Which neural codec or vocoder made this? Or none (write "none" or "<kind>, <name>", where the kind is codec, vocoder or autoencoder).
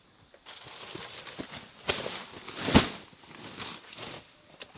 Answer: none